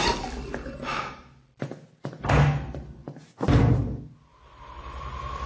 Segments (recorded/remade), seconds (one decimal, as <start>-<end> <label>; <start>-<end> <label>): 0.0-5.5 recorded